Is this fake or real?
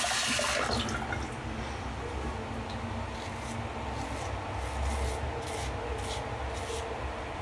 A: real